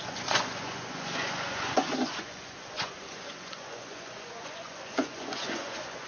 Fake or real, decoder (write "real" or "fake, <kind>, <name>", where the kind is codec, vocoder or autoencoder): fake, vocoder, Vocos